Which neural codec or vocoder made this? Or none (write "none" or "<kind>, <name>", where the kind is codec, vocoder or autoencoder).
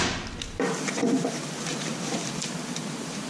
vocoder, BigVGAN v2